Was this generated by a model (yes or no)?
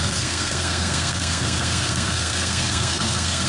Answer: yes